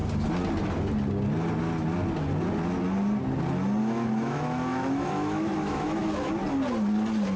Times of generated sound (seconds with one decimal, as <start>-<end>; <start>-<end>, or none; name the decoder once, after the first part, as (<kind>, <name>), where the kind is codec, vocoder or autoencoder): 3.8-6.3 (autoencoder, DAC-VAE)